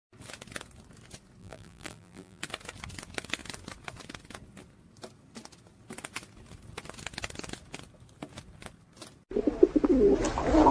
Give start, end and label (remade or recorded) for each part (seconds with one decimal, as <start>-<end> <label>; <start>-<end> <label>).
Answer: 0.0-1.4 recorded; 1.4-2.4 remade; 2.4-10.7 recorded